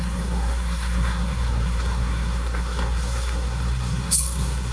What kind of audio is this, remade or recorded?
remade